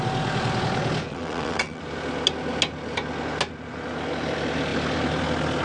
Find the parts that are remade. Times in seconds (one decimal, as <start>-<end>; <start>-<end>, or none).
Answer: 1.1-1.8